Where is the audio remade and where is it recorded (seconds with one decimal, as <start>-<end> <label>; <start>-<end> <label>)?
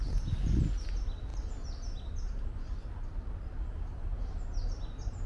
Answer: 0.0-5.3 recorded